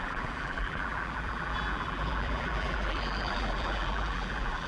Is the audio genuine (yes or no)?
no